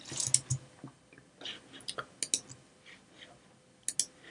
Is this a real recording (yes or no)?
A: yes